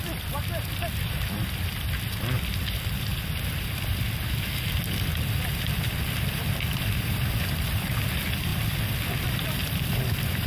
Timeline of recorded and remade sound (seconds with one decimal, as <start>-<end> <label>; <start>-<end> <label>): 0.0-10.5 remade